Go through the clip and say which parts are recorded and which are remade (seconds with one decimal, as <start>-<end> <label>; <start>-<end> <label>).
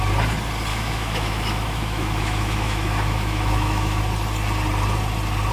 0.0-0.7 recorded; 0.7-4.0 remade; 4.0-5.5 recorded